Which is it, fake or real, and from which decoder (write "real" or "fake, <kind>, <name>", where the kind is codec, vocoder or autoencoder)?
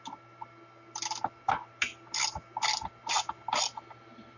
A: real